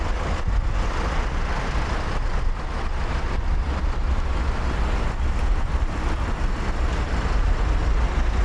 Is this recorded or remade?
recorded